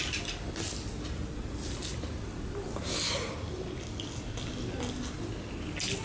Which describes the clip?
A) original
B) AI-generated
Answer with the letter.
A